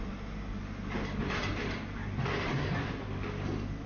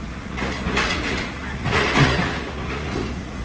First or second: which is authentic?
first